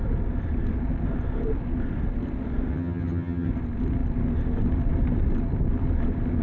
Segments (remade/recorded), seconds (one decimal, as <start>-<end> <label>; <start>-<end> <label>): 0.0-2.7 recorded; 2.7-3.5 remade; 3.5-6.4 recorded